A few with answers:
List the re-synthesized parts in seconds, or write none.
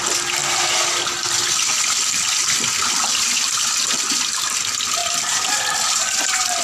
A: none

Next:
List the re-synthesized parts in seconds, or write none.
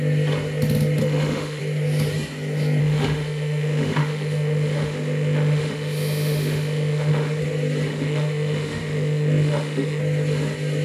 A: 1.0-1.6 (autoencoder, DAC-VAE); 2.8-7.4; 7.9-10.0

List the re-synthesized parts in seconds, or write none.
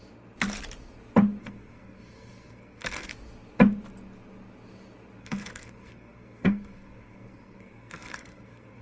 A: 1.4-3.1 (codec, SNAC); 5.2-8.8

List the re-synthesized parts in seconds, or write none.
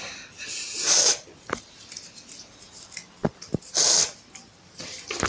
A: none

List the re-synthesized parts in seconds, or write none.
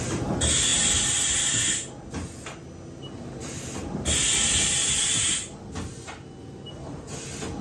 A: none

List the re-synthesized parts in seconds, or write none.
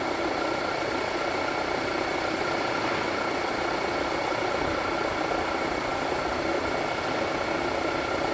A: 5.9-6.5 (vocoder, BigVGAN v2)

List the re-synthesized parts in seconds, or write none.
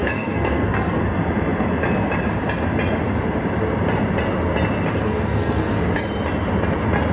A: 0.0-1.0 (codec, SNAC); 4.9-5.8